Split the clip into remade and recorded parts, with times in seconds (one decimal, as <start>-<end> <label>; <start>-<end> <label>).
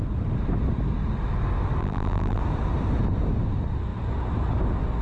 0.0-1.8 recorded; 1.8-2.4 remade; 2.4-5.0 recorded